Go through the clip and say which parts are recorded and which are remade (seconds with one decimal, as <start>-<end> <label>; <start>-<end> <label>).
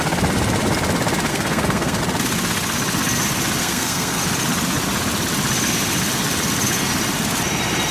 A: 0.0-1.3 recorded; 1.3-2.0 remade; 2.0-3.6 recorded; 3.6-4.2 remade; 4.2-7.9 recorded